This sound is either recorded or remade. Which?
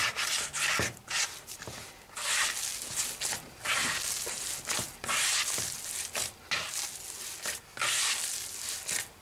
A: recorded